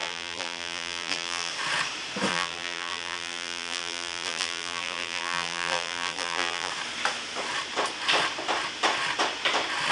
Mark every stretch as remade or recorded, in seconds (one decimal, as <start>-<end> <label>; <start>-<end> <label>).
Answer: 0.0-1.5 remade; 1.5-2.3 recorded; 2.3-6.7 remade; 6.7-9.9 recorded